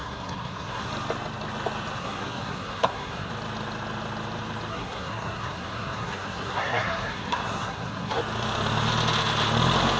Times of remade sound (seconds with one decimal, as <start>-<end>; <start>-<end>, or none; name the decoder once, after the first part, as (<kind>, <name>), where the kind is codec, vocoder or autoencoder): 0.0-0.9 (codec, SNAC); 2.0-3.3; 4.7-8.2